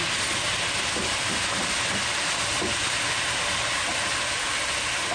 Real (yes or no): no